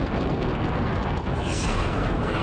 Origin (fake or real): fake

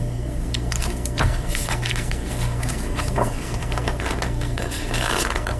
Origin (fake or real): fake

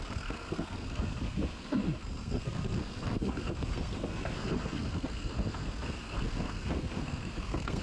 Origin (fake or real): fake